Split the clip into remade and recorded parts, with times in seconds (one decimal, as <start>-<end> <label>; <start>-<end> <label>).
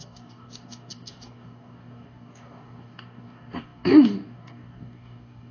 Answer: 0.0-5.5 remade